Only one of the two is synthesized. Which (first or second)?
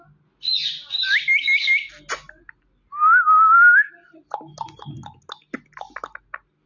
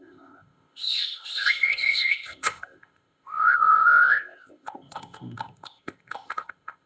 second